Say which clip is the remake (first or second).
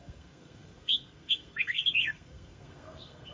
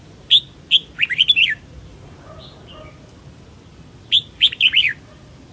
first